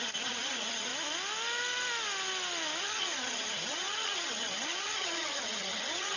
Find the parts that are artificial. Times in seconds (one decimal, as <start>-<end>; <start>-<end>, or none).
0.0-0.9; 2.8-6.2